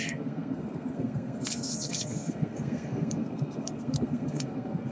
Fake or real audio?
fake